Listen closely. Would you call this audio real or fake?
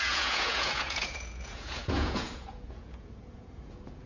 fake